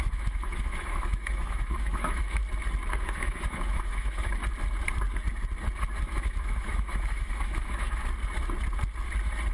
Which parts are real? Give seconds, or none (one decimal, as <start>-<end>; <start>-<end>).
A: 2.4-2.9; 4.4-6.0; 8.0-9.5